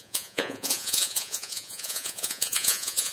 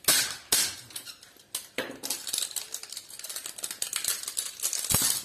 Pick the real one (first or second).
second